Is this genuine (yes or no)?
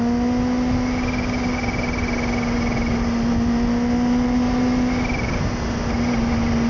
yes